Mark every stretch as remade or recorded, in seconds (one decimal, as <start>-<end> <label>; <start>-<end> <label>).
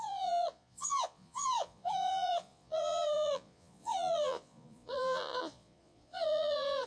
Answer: 0.0-6.9 remade